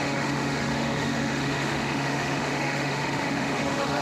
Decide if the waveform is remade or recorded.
remade